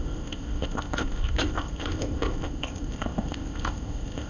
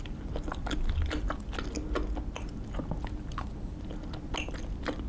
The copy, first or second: first